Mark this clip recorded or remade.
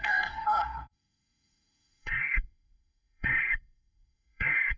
remade